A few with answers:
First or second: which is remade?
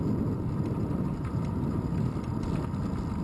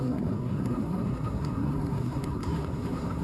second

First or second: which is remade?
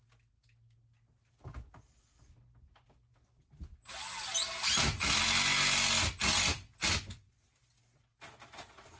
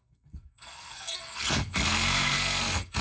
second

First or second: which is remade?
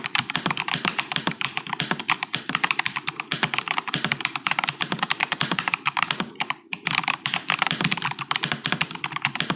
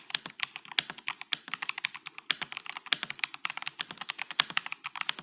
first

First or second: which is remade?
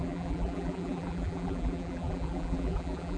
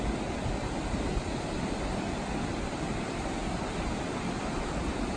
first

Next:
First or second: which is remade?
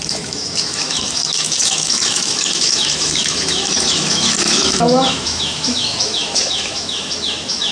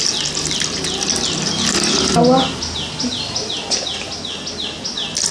first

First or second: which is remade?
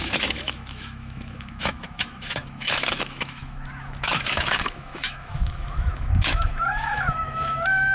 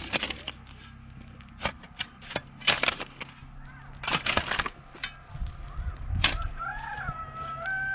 first